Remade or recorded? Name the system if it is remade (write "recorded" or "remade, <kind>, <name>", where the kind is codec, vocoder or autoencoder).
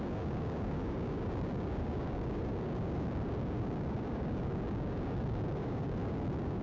remade, codec, DAC